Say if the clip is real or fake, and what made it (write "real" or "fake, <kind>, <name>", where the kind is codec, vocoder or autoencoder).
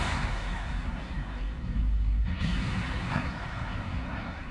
fake, codec, SNAC